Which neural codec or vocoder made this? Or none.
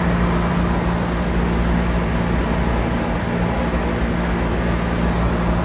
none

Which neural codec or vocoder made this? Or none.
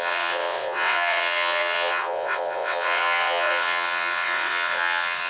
vocoder, WaveNeXt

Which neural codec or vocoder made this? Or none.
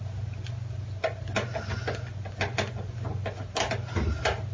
none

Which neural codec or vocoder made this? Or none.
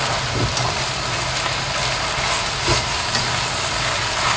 none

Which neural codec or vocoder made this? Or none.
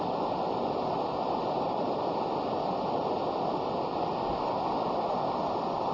none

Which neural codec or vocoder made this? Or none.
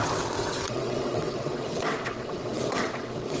vocoder, WaveNeXt